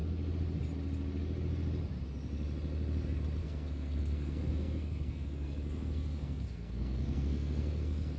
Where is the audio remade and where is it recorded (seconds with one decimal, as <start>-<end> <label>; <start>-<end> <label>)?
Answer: 0.0-3.4 recorded; 3.4-8.2 remade